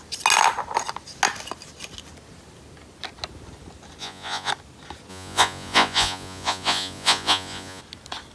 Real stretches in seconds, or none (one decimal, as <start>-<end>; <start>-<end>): 0.0-4.0; 4.5-5.1; 7.8-8.3